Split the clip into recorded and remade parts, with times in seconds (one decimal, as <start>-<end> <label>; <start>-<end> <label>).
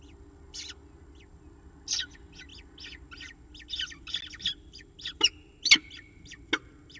0.0-7.0 recorded